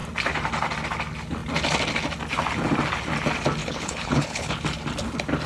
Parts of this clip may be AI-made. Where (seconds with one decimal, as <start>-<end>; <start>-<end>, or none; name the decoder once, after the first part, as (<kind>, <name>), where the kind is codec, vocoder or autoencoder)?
3.6-4.6 (codec, HILCodec)